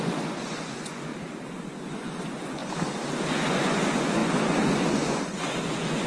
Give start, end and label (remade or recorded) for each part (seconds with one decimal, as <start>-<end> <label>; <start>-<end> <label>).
0.0-1.1 remade; 1.1-1.7 recorded; 1.7-2.6 remade; 2.6-3.3 recorded; 3.3-6.1 remade